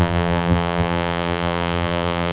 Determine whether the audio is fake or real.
fake